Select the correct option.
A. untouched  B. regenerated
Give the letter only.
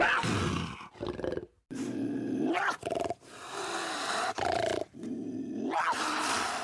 A